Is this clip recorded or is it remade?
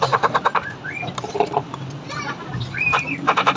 remade